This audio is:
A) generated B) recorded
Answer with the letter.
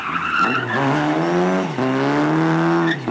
B